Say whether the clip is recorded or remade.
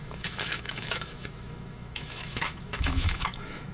remade